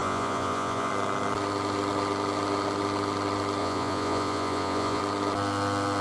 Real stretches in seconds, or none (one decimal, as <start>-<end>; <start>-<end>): 0.9-3.6; 5.0-6.0

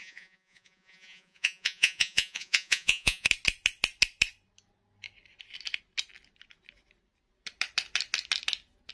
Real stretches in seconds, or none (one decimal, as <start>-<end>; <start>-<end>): 3.3-8.9